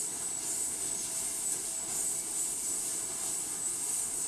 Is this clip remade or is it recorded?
recorded